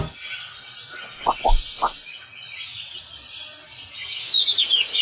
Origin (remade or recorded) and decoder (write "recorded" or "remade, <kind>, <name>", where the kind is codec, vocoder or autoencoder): recorded